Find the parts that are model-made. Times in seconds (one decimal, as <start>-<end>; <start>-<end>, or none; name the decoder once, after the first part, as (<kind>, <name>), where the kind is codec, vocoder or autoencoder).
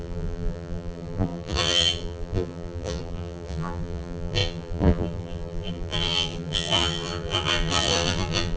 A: 0.0-8.6 (vocoder, BigVGAN v2)